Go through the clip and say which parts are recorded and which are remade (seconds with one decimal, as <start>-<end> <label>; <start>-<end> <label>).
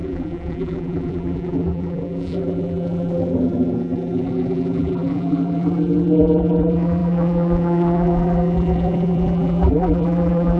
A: 0.0-10.6 remade